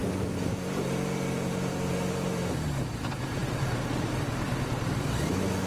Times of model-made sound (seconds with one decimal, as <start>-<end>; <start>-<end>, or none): 0.0-2.9; 3.4-4.1; 4.7-5.3